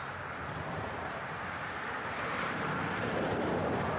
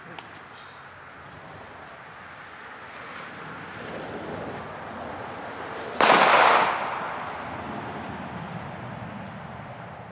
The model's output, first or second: first